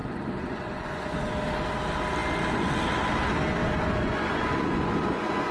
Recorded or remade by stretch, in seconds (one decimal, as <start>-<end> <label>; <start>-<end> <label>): 0.0-1.3 remade; 1.3-3.6 recorded; 3.6-5.5 remade

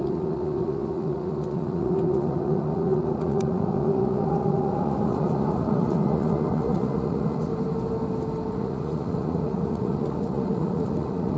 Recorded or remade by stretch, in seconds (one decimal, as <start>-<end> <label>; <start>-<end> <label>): 0.0-7.5 remade; 7.5-8.5 recorded; 8.5-11.4 remade

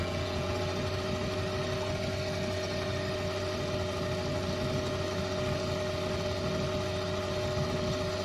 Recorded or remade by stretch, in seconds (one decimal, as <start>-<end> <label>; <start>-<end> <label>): 0.0-0.6 remade; 0.6-8.2 recorded